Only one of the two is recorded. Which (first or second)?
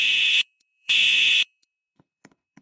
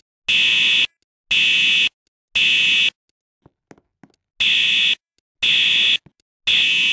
second